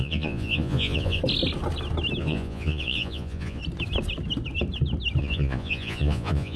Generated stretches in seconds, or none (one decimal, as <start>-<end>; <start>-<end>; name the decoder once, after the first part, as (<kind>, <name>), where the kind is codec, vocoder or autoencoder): 0.0-1.2 (vocoder, Vocos); 2.2-3.6; 5.2-6.6